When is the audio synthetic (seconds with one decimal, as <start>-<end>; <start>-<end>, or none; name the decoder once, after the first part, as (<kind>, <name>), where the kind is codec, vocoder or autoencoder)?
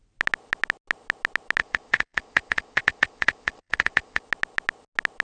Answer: 1.6-4.2 (vocoder, Vocos)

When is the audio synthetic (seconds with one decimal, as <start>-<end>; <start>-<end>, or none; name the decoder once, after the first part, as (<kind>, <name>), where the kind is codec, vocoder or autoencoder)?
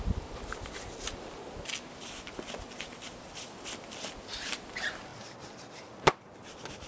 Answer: none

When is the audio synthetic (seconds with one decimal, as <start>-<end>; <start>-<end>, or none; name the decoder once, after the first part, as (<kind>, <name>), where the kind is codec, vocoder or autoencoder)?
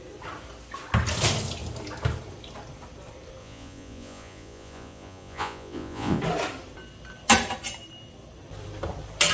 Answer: 3.4-6.2 (vocoder, Vocos)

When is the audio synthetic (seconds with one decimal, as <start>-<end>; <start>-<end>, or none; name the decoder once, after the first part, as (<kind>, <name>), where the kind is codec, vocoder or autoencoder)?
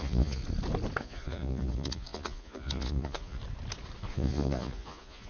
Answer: 0.0-0.4 (vocoder, Vocos); 1.0-3.4; 4.1-5.3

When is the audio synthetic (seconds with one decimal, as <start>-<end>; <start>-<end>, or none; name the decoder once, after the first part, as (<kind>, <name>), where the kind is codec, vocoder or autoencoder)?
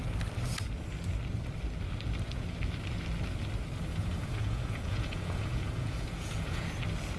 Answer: 3.9-6.7 (vocoder, Vocos)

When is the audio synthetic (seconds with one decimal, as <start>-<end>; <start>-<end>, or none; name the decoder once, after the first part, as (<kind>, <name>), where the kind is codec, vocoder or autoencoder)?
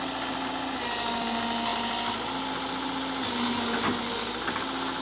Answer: none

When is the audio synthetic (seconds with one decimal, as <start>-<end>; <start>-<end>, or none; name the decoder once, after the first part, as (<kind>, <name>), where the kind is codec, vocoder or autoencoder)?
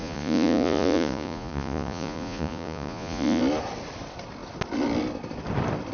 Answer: 0.0-3.4 (vocoder, Vocos)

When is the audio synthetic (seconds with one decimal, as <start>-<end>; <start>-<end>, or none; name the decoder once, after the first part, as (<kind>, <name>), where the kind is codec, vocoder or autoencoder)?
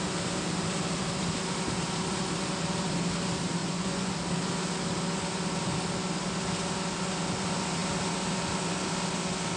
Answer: 3.6-4.1 (vocoder, Vocos)